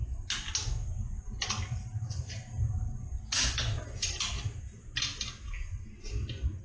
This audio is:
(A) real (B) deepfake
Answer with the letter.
A